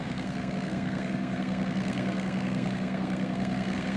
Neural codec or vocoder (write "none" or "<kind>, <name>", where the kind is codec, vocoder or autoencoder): codec, SNAC